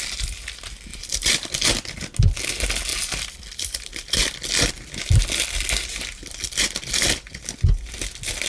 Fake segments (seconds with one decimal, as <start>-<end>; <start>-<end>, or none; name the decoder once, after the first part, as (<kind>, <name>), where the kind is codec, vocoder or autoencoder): 0.9-1.7 (vocoder, BigVGAN v2); 2.9-4.7